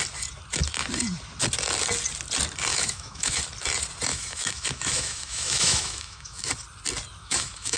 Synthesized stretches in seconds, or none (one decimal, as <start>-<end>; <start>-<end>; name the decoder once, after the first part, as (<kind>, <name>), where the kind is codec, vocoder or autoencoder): 2.7-3.4 (autoencoder, DAC-VAE); 4.1-6.5; 7.2-7.8